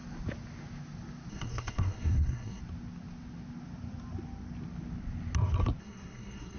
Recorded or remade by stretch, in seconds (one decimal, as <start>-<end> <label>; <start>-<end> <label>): 0.0-1.3 recorded; 1.3-2.6 remade; 2.6-5.8 recorded; 5.8-6.6 remade